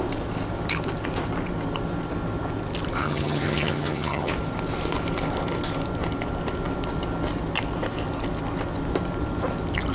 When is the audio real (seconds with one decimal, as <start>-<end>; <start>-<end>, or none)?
0.0-3.0; 4.3-9.9

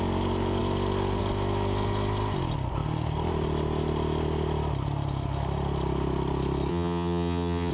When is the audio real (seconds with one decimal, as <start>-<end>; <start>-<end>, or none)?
0.0-6.7

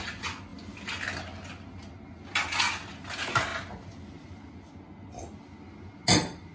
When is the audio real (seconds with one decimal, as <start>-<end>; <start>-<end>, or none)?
0.0-6.5